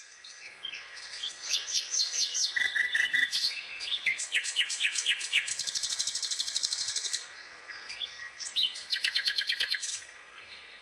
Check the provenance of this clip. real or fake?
fake